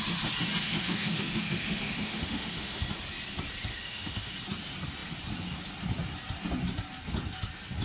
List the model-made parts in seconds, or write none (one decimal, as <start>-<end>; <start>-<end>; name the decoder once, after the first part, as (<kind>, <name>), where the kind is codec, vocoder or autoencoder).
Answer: 0.6-2.8 (autoencoder, DAC-VAE); 3.7-4.3